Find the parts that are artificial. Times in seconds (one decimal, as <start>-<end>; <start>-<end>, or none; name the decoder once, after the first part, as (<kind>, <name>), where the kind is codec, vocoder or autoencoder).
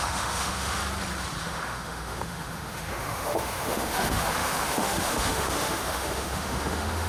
0.0-0.8 (autoencoder, DAC-VAE); 1.4-7.1